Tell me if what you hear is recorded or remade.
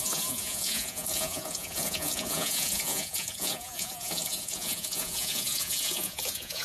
remade